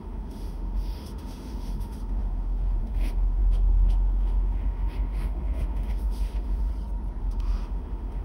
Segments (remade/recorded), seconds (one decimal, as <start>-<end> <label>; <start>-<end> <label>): 0.0-6.7 remade; 6.7-7.2 recorded; 7.2-8.2 remade